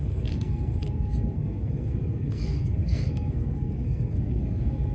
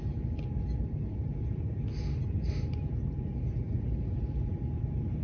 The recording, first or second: second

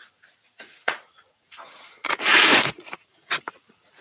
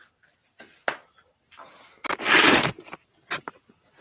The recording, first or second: second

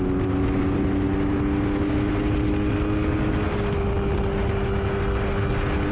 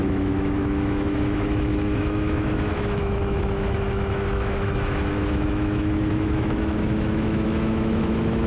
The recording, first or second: first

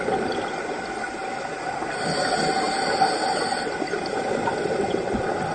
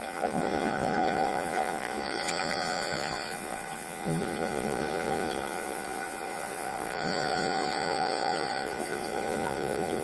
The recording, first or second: first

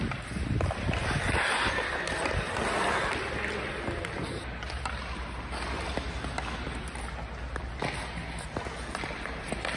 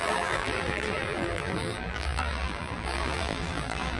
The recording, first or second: first